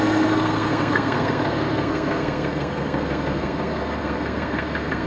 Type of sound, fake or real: fake